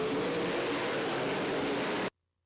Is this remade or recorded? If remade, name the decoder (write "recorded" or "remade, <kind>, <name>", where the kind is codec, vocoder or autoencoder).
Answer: recorded